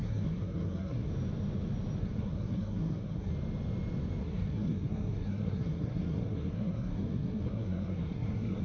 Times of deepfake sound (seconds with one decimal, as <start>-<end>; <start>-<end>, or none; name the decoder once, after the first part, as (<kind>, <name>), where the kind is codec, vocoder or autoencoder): 0.0-1.1 (codec, SNAC); 2.0-3.3; 4.2-8.6